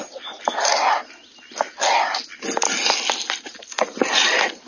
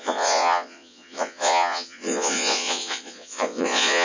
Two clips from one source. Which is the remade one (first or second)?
second